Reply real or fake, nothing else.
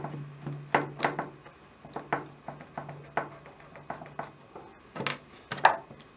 real